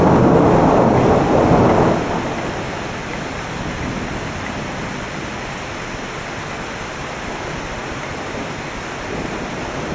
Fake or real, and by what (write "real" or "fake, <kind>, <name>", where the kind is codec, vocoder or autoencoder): real